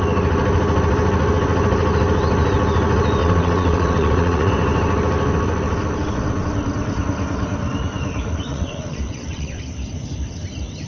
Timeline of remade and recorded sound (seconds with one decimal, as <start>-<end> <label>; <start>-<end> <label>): 0.0-3.2 recorded; 3.2-4.5 remade; 4.5-8.5 recorded; 8.5-9.6 remade; 9.6-10.9 recorded